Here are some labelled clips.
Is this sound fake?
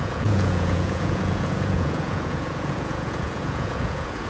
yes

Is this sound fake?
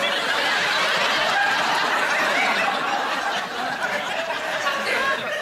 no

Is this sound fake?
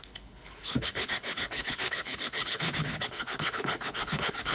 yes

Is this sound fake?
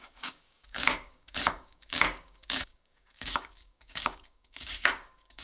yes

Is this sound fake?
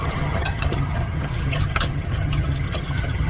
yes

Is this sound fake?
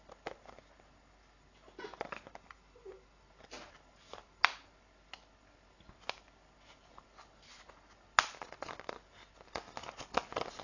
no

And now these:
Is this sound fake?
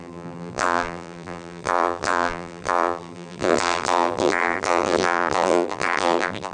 yes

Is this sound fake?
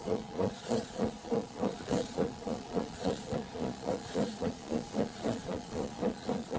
yes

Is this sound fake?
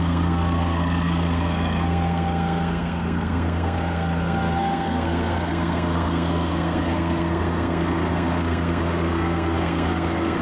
yes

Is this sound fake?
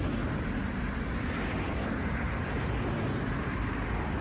no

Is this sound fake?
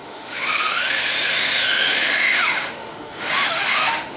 yes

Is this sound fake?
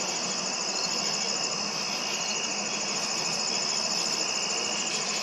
no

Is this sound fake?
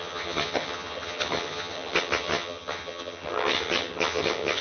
yes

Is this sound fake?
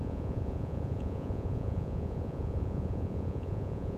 yes